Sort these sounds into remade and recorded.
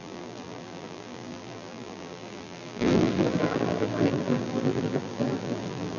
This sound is remade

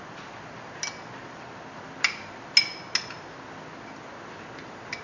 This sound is recorded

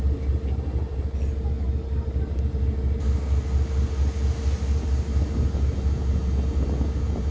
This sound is recorded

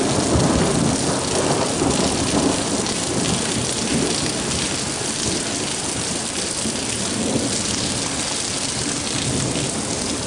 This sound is recorded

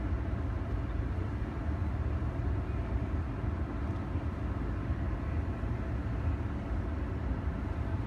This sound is recorded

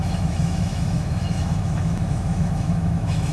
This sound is remade